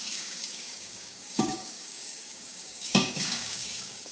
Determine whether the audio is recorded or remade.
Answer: remade